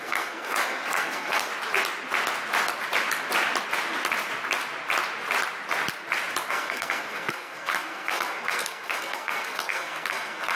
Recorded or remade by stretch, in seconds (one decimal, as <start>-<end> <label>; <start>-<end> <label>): 0.0-1.5 remade; 1.5-6.5 recorded; 6.5-10.6 remade